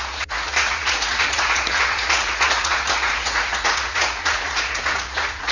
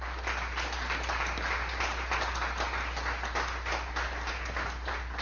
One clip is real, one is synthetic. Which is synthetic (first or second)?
first